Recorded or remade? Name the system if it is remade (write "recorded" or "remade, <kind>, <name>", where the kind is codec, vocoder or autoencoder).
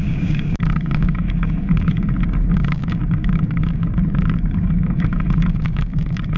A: remade, codec, DAC